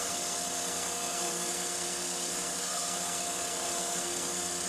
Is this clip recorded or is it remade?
remade